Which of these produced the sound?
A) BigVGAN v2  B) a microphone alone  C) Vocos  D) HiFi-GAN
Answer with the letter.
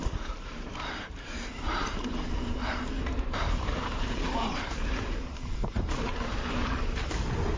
A